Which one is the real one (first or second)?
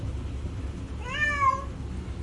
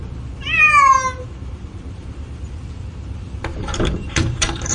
first